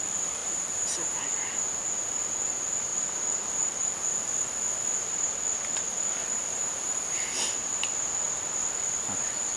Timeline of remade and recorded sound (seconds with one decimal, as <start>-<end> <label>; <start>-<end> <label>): 0.0-0.4 recorded; 0.4-1.2 remade; 1.2-6.2 recorded; 6.2-8.0 remade; 8.0-9.6 recorded